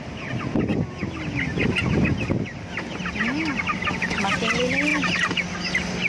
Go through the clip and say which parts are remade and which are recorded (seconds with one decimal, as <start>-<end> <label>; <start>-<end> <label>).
0.0-6.1 recorded